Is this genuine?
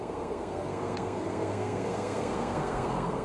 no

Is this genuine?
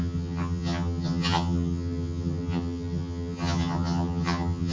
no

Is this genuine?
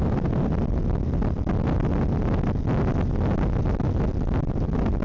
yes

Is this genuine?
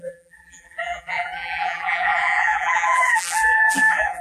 no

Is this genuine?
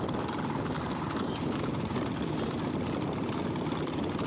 yes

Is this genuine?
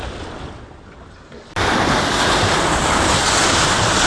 yes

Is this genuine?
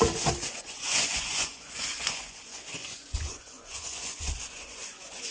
no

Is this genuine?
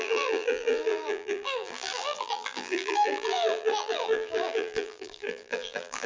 no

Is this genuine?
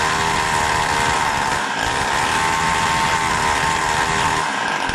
yes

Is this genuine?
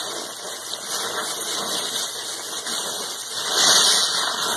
yes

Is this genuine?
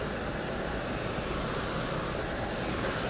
yes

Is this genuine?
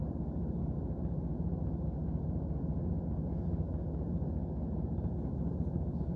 yes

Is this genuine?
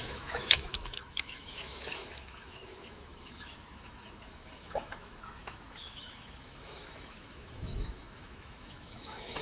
no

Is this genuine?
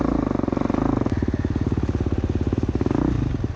yes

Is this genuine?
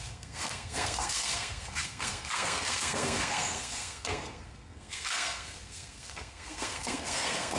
no